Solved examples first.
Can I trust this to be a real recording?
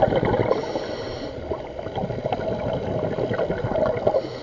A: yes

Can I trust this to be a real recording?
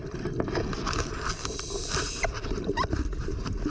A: yes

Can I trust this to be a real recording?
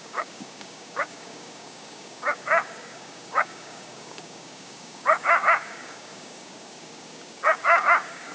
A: no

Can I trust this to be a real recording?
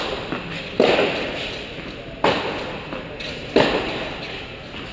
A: yes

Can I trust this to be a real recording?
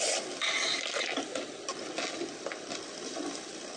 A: yes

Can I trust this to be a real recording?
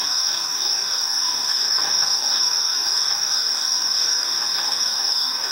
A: no